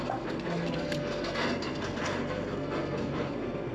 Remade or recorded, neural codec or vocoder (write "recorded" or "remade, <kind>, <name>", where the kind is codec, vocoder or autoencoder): remade, codec, SNAC